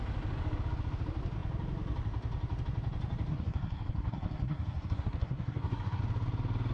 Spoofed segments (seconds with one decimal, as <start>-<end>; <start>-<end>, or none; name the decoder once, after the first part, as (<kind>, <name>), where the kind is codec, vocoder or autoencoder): 3.3-6.0 (codec, SNAC)